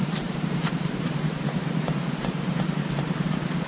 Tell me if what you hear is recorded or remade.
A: remade